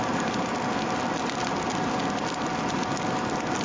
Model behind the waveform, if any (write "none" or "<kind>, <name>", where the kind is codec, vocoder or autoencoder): none